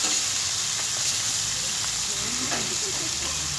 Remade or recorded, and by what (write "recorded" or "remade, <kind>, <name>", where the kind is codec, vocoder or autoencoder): recorded